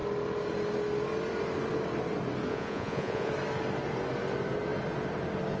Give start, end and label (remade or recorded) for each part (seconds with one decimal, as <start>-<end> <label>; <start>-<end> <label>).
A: 0.0-2.5 recorded; 2.5-3.3 remade; 3.3-5.6 recorded